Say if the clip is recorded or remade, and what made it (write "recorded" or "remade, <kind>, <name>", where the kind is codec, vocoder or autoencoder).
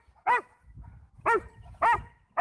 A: recorded